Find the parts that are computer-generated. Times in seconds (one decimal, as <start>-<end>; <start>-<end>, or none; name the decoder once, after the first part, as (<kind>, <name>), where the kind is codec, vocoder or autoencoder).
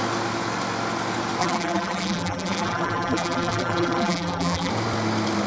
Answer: 1.4-4.7 (vocoder, BigVGAN v2)